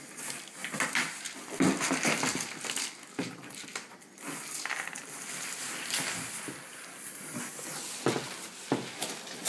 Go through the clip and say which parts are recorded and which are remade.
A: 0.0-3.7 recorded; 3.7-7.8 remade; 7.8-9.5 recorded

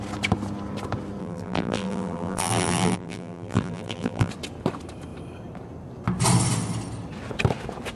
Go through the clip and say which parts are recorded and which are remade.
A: 0.0-1.2 recorded; 1.2-4.3 remade; 4.3-8.0 recorded

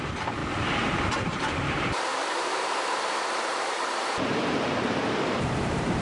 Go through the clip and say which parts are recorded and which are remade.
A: 0.0-6.0 remade

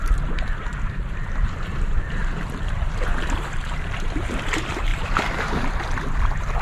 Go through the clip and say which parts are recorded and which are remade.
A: 0.0-6.6 remade